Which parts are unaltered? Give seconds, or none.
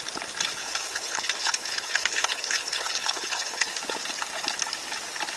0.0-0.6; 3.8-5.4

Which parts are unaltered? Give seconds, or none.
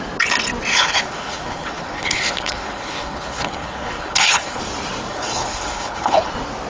0.0-0.7; 4.6-5.1; 6.3-6.7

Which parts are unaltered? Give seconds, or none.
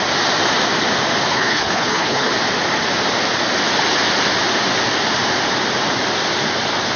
0.0-1.3; 2.3-7.0